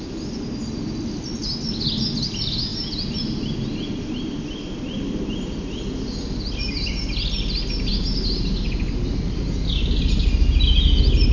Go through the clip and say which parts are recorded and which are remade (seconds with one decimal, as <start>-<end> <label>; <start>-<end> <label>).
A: 0.0-11.3 recorded